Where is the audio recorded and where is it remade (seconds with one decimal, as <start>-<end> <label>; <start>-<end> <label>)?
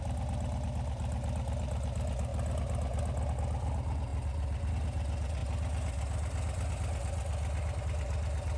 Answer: 0.0-8.6 recorded